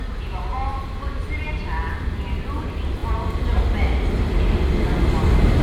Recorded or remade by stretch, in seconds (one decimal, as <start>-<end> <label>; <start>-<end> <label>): 0.0-5.6 recorded